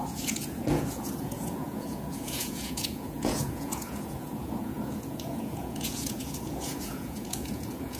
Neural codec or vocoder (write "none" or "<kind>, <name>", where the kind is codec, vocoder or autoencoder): vocoder, Vocos